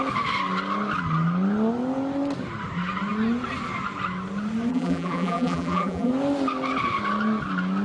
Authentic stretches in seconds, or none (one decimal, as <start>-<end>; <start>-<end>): 0.0-4.7; 6.1-7.8